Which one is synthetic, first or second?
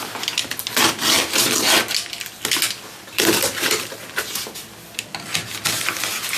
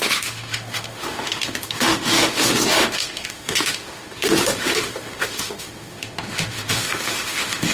second